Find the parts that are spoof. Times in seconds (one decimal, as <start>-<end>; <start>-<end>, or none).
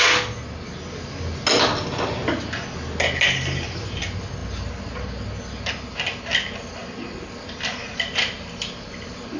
none